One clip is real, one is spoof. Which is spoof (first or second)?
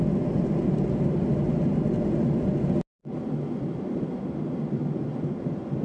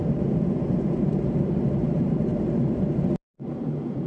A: second